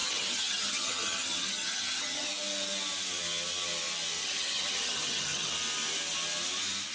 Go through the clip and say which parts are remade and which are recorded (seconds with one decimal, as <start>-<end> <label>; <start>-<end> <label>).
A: 0.0-2.3 remade; 2.3-4.2 recorded; 4.2-5.5 remade; 5.5-6.9 recorded